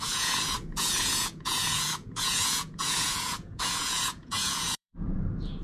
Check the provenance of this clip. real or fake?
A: fake